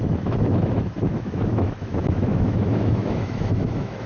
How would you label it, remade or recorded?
remade